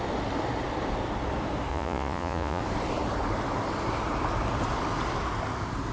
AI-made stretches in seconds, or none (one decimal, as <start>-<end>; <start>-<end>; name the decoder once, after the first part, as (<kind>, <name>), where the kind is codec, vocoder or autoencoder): 1.7-2.6 (vocoder, Vocos)